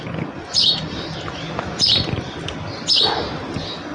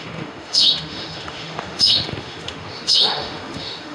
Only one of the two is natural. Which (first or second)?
first